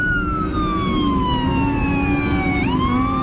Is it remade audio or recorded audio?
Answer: recorded